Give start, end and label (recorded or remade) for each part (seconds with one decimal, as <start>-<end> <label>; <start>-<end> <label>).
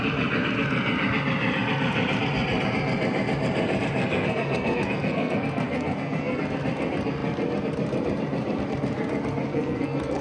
0.0-4.0 recorded; 4.0-6.4 remade; 6.4-9.5 recorded; 9.5-10.2 remade